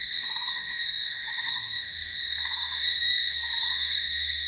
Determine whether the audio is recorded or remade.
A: remade